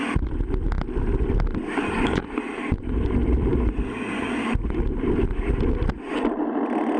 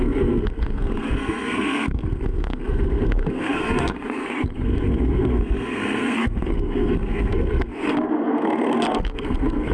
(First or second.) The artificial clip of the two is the second